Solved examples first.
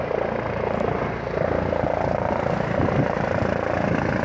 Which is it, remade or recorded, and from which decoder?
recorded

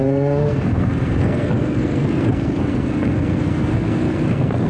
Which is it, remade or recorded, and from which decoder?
remade, codec, SNAC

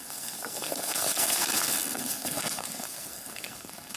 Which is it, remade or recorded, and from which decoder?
remade, codec, SNAC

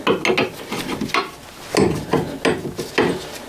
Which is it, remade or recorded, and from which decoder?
recorded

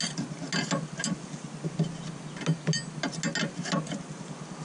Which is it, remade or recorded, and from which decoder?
recorded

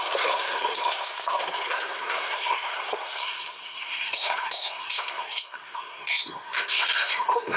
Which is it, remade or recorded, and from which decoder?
remade, codec, SNAC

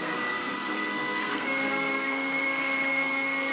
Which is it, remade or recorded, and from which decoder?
remade, codec, SNAC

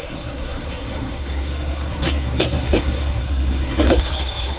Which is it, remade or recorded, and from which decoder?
remade, codec, SNAC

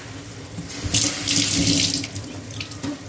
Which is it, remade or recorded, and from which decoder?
recorded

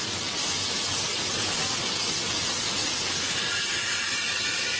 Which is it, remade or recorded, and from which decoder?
recorded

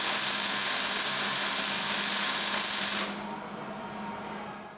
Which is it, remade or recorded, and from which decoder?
recorded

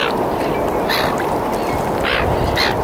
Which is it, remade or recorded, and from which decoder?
recorded